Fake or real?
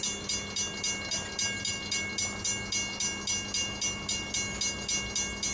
real